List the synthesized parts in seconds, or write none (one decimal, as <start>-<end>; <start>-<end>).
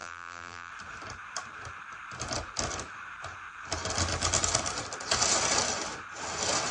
0.0-0.7